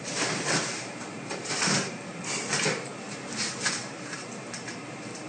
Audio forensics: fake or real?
fake